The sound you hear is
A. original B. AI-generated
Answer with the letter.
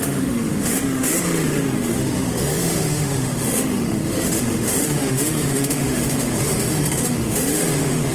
B